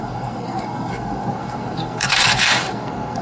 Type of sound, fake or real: fake